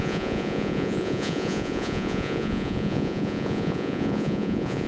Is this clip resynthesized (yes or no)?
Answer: yes